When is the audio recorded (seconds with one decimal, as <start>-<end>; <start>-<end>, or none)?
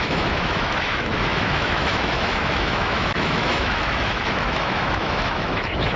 none